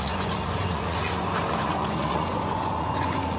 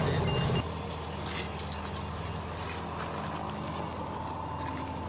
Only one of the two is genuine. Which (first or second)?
second